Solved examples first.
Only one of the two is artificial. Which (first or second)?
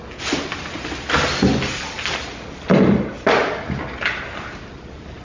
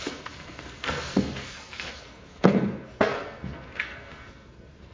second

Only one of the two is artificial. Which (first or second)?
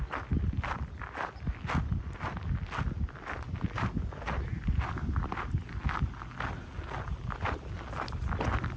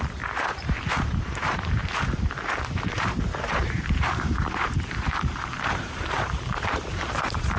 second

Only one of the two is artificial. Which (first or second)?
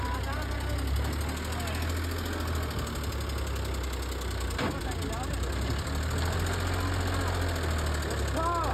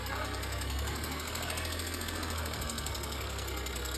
second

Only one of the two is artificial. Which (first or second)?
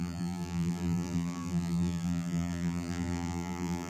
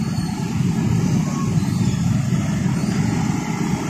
first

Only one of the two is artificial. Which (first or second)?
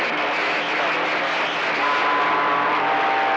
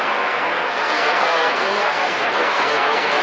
second